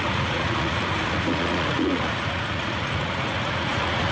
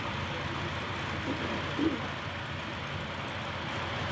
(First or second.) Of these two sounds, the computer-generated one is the first